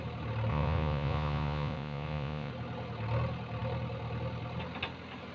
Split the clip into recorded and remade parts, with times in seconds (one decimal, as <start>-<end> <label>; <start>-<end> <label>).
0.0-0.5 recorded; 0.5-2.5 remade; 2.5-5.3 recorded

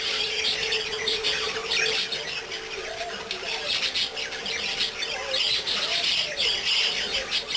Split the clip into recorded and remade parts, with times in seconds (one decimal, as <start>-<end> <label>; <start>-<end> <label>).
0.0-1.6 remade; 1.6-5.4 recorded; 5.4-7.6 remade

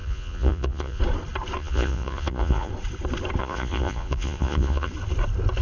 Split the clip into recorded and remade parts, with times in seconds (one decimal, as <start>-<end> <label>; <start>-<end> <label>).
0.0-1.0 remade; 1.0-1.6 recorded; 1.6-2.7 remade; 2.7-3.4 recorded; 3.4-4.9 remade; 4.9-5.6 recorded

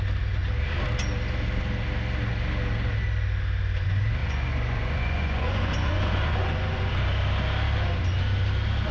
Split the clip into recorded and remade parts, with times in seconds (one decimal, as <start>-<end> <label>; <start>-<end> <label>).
0.0-4.2 recorded; 4.2-6.9 remade; 6.9-8.9 recorded

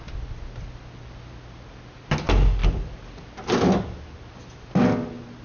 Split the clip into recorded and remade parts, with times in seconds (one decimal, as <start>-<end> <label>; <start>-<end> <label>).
0.0-5.4 recorded